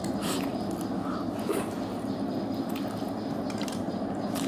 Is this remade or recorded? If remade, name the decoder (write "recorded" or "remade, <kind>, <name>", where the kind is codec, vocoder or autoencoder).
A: recorded